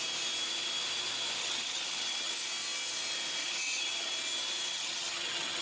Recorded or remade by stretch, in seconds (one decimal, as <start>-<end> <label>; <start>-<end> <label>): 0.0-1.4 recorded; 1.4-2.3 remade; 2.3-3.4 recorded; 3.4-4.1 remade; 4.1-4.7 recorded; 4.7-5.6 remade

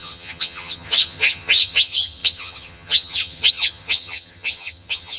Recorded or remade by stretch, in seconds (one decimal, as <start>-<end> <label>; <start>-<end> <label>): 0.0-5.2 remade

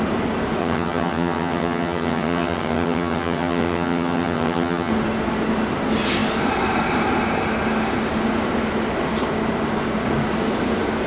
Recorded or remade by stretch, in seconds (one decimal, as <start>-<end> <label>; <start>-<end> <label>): 0.0-0.6 recorded; 0.6-4.9 remade; 4.9-11.1 recorded

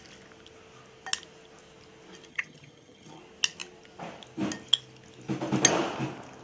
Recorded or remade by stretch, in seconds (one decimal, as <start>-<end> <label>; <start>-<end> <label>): 0.0-2.3 recorded; 2.3-3.2 remade; 3.2-6.4 recorded

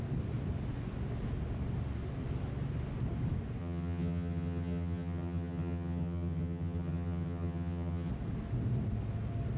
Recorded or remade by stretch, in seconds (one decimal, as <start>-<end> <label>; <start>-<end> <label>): 0.0-3.6 recorded; 3.6-8.1 remade; 8.1-9.6 recorded

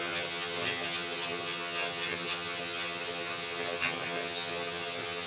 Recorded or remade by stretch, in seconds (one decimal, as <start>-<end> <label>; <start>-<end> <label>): 0.0-5.3 remade

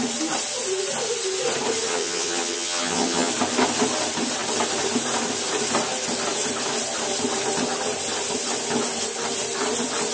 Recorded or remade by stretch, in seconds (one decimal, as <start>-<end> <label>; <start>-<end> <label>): 0.0-1.9 recorded; 1.9-3.3 remade; 3.3-10.1 recorded